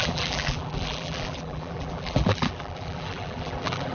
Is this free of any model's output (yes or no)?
no